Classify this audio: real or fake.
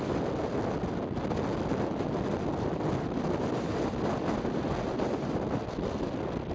real